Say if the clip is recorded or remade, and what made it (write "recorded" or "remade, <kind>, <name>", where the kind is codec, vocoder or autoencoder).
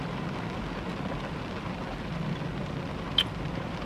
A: recorded